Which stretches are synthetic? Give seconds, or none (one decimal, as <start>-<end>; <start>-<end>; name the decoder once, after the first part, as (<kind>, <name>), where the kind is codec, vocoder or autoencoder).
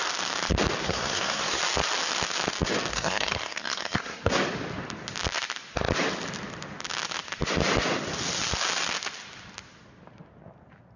0.8-1.6 (codec, SNAC); 2.9-4.4